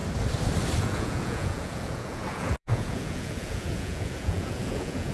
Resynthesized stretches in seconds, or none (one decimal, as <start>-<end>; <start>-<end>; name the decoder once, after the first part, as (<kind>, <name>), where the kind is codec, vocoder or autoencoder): 0.8-5.1 (vocoder, Vocos)